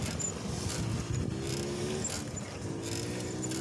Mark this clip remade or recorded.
recorded